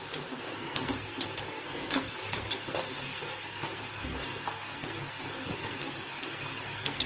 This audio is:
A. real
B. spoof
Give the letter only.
B